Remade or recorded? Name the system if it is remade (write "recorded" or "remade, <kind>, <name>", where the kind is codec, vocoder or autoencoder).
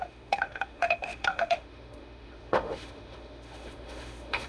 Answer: remade, autoencoder, DAC-VAE